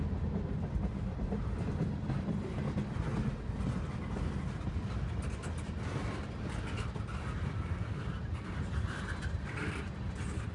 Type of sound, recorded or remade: recorded